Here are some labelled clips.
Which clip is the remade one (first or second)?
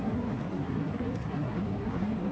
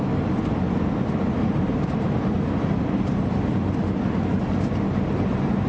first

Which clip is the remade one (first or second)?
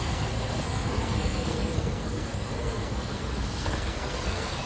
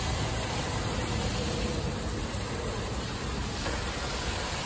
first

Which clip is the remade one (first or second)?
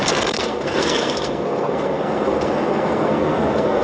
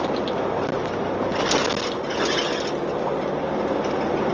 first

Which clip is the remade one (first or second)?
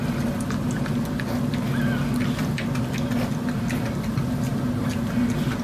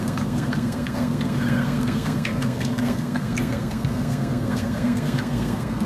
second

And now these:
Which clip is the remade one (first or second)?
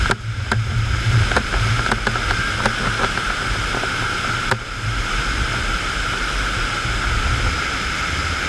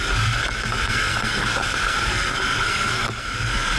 second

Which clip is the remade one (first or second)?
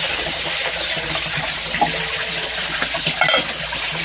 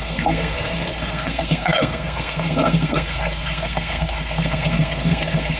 second